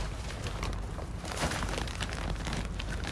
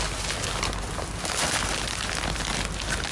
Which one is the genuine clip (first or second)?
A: second